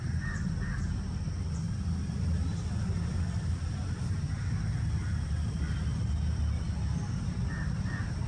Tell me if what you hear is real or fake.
fake